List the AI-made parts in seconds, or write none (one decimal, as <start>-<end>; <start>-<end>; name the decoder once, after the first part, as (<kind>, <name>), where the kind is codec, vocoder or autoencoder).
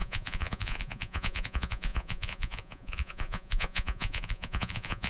0.0-5.1 (vocoder, Vocos)